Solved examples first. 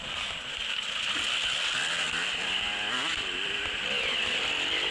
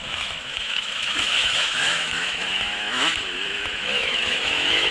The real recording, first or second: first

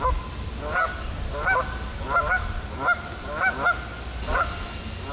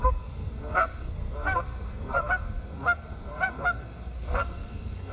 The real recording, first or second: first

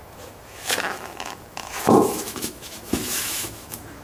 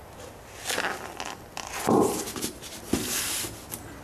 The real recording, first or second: second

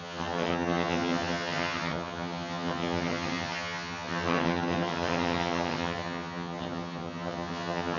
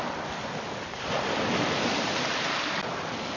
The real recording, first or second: second